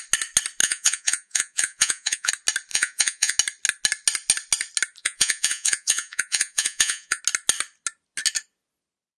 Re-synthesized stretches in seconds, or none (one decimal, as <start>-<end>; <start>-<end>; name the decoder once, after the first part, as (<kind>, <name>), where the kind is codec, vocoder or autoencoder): 0.6-2.3 (vocoder, Vocos); 2.7-3.4; 5.0-7.2